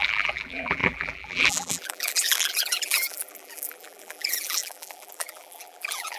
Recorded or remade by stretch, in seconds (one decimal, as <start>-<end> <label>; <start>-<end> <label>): 0.0-6.2 remade